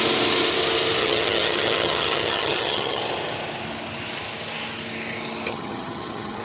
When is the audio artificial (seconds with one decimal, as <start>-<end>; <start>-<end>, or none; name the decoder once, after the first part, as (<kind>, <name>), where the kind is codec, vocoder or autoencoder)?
1.0-3.0 (vocoder, HiFi-GAN); 5.5-6.4